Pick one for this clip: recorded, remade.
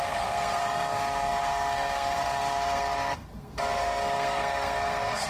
remade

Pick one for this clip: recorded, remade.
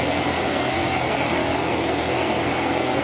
remade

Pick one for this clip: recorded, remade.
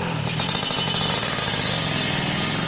recorded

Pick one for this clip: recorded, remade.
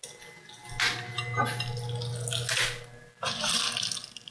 recorded